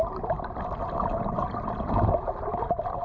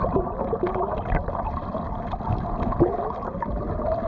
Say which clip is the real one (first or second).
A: second